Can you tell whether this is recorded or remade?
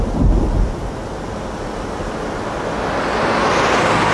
recorded